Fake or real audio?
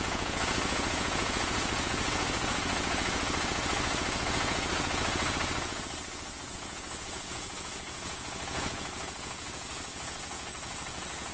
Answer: fake